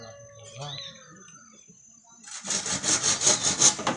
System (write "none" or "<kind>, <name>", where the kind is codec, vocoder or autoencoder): none